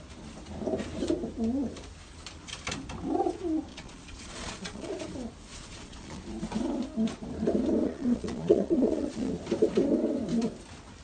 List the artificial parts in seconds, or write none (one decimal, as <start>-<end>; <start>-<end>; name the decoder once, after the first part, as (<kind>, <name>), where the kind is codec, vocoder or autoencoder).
3.7-4.9 (vocoder, Vocos); 5.5-6.2; 7.8-9.3